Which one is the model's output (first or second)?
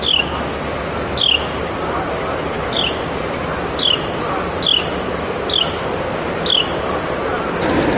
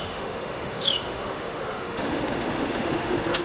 second